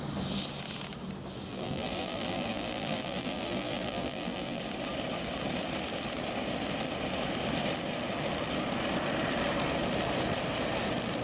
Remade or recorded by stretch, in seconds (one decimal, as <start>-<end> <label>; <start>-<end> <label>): 0.0-1.5 recorded; 1.5-4.6 remade; 4.6-11.2 recorded